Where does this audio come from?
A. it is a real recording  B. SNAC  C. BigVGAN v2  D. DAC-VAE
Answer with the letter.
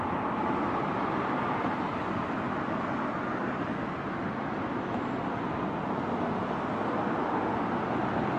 A